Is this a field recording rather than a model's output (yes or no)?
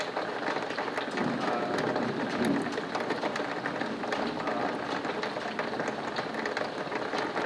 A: yes